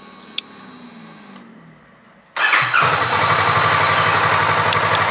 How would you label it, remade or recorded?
recorded